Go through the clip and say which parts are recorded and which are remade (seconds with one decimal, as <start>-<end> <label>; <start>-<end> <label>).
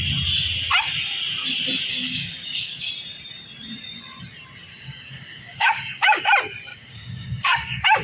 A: 0.0-1.9 recorded; 1.9-2.9 remade; 2.9-4.7 recorded; 4.7-6.2 remade; 6.2-6.7 recorded; 6.7-8.0 remade